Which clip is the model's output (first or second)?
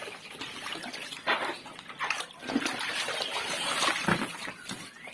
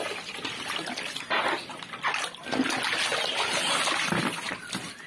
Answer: first